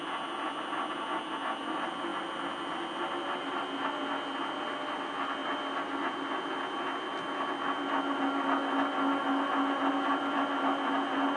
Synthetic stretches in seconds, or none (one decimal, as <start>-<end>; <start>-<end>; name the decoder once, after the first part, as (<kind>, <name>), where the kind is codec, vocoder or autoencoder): none